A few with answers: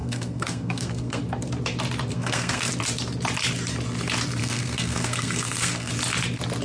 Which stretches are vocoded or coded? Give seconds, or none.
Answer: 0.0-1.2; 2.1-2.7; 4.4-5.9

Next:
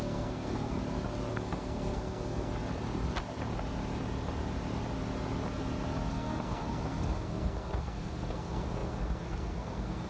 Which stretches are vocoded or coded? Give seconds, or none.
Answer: 0.0-0.8; 1.3-2.5; 6.1-10.1

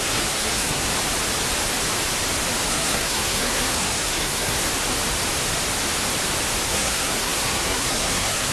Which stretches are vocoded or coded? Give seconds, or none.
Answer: 0.0-0.9; 2.7-4.7; 6.7-8.5

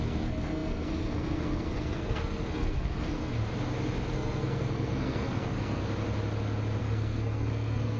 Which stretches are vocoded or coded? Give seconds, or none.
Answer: 0.0-3.3; 4.1-5.8; 6.8-8.0

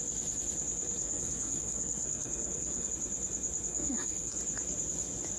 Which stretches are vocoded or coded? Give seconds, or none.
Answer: 1.0-2.9; 3.7-4.4

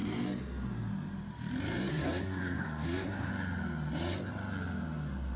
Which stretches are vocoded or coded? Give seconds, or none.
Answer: 1.9-3.3